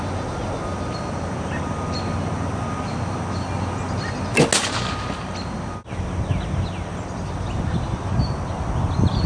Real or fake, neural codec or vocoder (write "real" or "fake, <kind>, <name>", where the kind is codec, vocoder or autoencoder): real